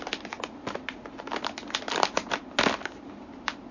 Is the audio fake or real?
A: real